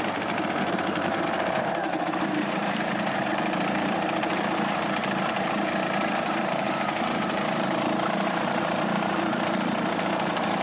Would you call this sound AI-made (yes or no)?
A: yes